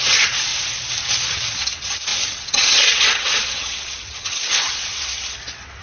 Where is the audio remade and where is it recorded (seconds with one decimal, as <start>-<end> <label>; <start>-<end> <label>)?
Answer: 0.0-0.5 remade; 0.5-1.3 recorded; 1.3-5.8 remade